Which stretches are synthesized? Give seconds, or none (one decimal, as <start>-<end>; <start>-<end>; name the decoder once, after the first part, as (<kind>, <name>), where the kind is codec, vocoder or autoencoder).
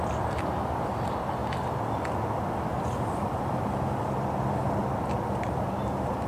2.7-3.6 (vocoder, BigVGAN v2)